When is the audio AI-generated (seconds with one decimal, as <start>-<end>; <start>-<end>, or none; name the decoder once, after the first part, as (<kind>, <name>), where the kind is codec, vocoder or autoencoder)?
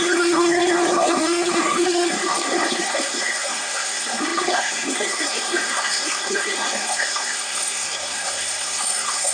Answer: 0.0-9.3 (codec, SNAC)